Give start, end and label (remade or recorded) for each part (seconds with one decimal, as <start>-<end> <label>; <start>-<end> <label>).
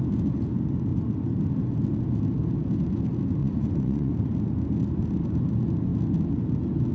0.0-3.4 recorded; 3.4-4.1 remade; 4.1-6.9 recorded